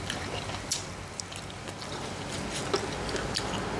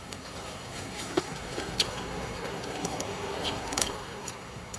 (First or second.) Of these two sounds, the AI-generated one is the second